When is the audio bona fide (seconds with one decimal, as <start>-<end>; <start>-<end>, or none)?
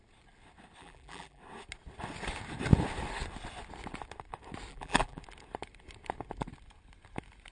0.0-0.8; 1.4-4.7; 5.2-7.5